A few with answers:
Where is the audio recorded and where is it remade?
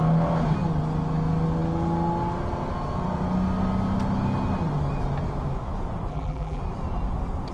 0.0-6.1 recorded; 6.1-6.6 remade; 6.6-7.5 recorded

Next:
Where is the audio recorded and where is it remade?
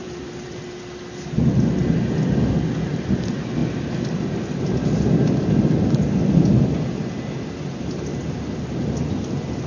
0.0-0.6 remade; 0.6-9.7 recorded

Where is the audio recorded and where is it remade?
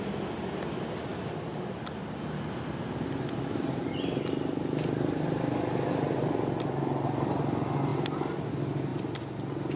0.0-9.8 recorded